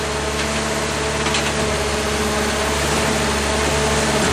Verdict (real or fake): real